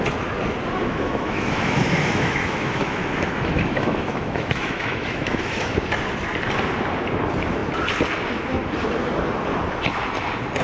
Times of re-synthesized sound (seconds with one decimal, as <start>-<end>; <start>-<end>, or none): 0.8-5.7